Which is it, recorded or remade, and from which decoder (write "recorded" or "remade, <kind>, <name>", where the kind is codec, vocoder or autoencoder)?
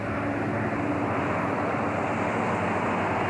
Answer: recorded